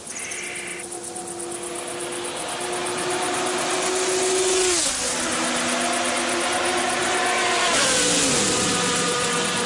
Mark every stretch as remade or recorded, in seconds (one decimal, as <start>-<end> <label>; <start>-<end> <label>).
0.0-9.7 recorded